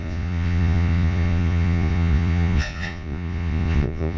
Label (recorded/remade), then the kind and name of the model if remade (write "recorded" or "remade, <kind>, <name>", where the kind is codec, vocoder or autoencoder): remade, vocoder, Vocos